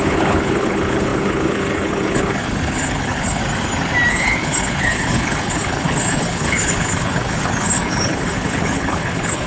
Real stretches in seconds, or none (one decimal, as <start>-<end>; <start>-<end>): 3.4-4.1